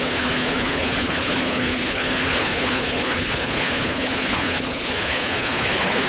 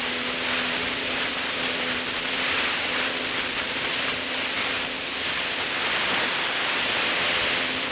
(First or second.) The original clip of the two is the second